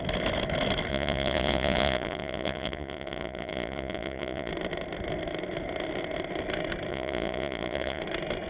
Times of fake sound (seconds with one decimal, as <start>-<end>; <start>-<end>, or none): 0.9-4.5; 6.9-8.0